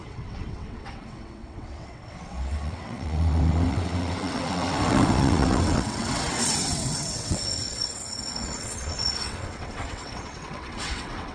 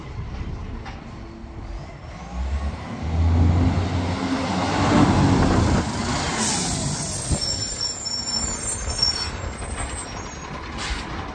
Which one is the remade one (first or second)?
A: first